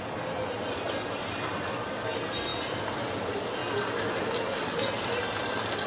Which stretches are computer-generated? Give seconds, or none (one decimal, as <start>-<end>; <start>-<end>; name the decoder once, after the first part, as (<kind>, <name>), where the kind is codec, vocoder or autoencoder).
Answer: none